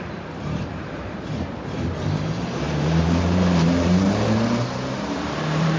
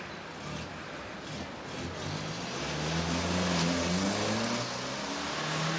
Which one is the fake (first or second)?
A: first